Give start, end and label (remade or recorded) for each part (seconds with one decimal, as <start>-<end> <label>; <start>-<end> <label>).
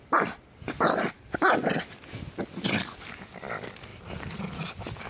0.0-5.1 recorded